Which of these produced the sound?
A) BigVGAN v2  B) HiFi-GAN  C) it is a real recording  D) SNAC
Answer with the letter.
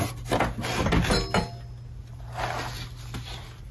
C